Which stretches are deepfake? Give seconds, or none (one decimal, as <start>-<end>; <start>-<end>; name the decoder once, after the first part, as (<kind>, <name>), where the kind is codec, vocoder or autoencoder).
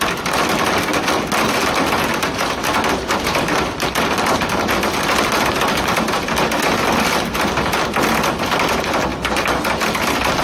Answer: none